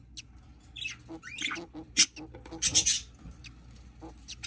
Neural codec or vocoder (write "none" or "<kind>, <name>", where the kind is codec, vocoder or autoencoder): none